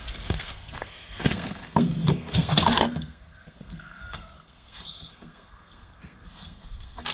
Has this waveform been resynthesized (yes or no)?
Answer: yes